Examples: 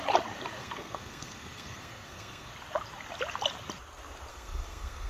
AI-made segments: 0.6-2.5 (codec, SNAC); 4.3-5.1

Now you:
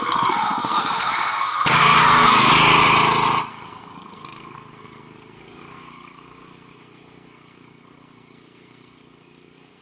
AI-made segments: 0.0-2.5 (codec, SNAC); 3.5-9.8

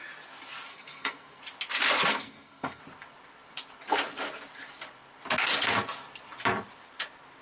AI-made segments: 0.7-1.4 (codec, SNAC); 2.1-2.8

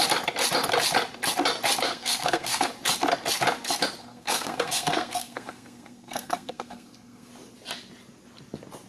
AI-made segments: 1.8-2.7 (codec, SNAC); 4.0-7.3

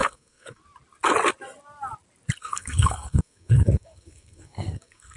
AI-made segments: 0.0-0.6 (codec, SNAC); 2.4-5.2

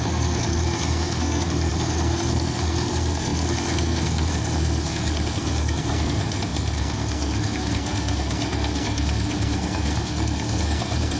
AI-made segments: 0.0-11.2 (codec, SNAC)